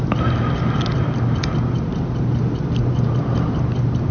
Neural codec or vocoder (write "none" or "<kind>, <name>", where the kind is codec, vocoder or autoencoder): none